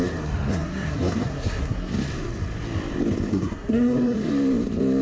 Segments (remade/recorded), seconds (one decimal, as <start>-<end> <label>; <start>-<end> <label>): 0.0-0.5 recorded; 0.5-1.9 remade; 1.9-3.3 recorded; 3.3-4.3 remade; 4.3-5.0 recorded